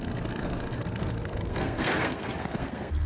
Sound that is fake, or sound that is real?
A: fake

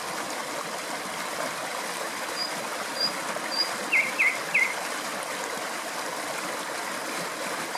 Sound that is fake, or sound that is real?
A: fake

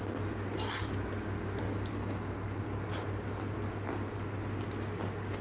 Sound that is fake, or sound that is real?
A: real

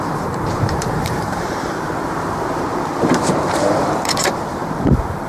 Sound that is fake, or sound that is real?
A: fake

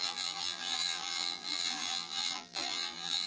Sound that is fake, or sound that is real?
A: fake